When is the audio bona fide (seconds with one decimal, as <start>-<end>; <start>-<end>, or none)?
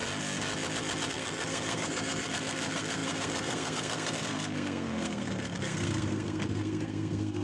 0.0-1.1